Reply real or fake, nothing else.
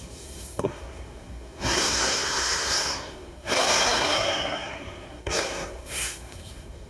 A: fake